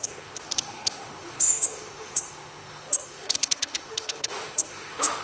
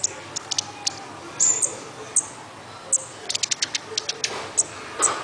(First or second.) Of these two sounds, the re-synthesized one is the first